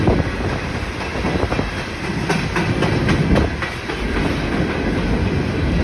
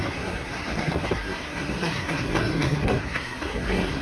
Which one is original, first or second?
first